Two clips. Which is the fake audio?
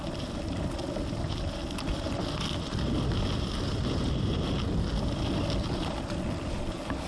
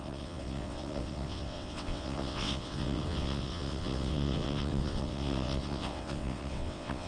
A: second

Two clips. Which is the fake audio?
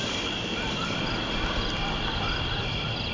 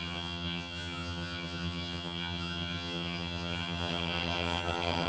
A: second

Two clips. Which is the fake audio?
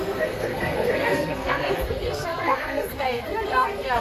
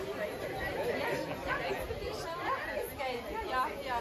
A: first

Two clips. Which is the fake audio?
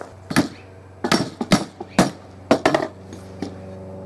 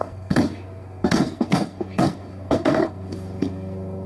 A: second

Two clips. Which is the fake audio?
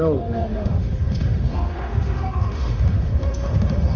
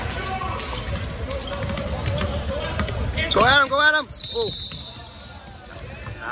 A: first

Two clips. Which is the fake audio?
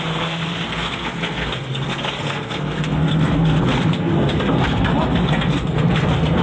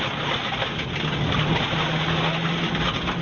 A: first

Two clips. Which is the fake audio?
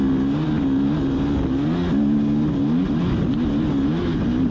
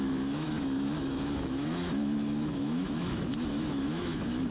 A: second